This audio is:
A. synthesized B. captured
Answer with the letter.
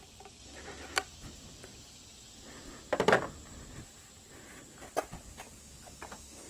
B